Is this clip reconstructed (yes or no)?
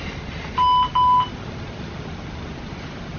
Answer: no